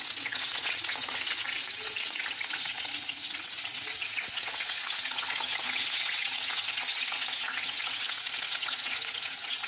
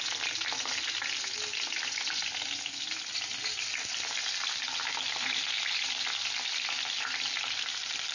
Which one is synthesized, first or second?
first